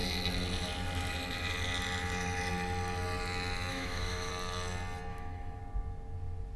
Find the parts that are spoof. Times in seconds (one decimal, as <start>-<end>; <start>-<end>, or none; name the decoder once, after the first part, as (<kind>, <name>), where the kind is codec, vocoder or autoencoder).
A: 3.7-4.3 (autoencoder, DAC-VAE); 5.1-5.6